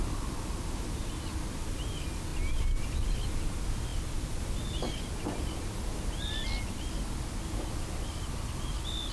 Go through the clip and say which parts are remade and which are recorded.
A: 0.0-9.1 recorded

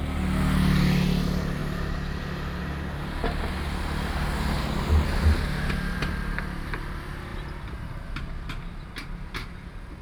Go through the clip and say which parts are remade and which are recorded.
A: 0.0-10.0 recorded

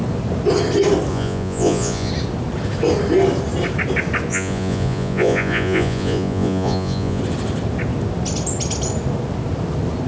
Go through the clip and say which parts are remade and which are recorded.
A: 0.0-1.1 recorded; 1.1-2.1 remade; 2.1-4.3 recorded; 4.3-7.2 remade; 7.2-10.1 recorded